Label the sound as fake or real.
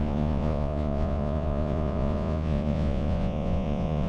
fake